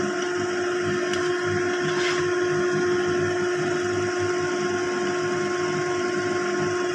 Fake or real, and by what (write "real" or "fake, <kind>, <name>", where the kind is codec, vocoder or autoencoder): real